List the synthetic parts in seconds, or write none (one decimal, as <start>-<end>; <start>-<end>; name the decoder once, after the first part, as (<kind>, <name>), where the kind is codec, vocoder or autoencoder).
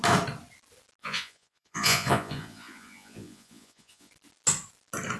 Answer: 1.0-4.1 (vocoder, Vocos)